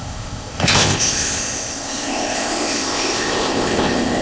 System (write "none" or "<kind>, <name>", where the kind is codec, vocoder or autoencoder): codec, ZipCodec